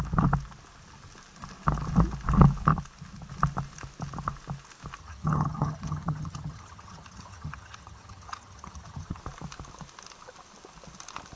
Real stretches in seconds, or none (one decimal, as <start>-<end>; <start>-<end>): 0.0-5.0; 9.2-11.4